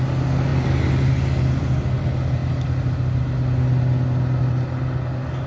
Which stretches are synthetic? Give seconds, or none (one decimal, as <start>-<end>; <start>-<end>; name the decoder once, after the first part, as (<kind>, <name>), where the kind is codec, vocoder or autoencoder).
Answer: none